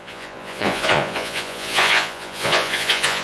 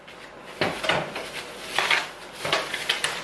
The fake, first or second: first